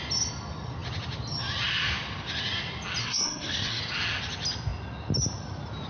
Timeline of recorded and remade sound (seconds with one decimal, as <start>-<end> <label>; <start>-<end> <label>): 0.0-3.0 recorded; 3.0-3.8 remade; 3.8-5.9 recorded